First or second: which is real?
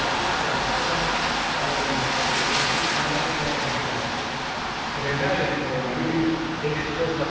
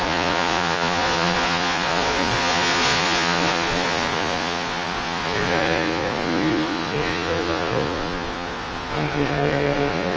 first